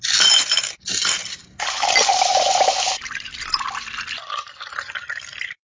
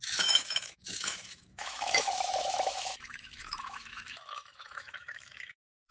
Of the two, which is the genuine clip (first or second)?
first